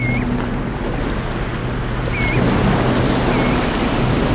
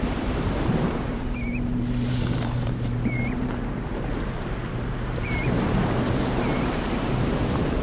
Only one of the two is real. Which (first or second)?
first